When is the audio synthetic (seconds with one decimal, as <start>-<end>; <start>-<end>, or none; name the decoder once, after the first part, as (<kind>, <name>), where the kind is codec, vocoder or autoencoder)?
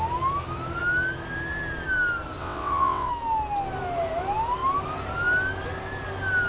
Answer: 2.4-3.1 (vocoder, WaveNeXt)